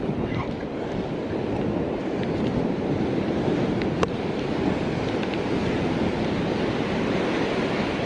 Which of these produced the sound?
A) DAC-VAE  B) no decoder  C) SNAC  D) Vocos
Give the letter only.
B